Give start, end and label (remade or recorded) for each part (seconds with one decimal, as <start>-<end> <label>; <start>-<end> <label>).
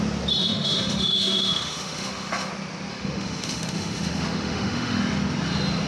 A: 0.0-0.4 recorded; 0.4-2.5 remade; 2.5-2.9 recorded; 2.9-5.0 remade; 5.0-5.9 recorded